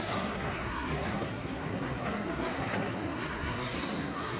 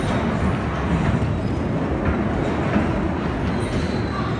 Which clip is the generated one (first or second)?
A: first